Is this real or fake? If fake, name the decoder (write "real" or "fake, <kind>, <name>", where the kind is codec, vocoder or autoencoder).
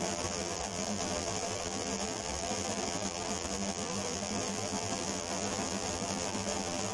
fake, vocoder, BigVGAN v2